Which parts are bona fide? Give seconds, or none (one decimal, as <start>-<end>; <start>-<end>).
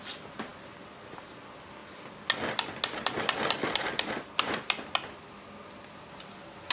0.0-6.7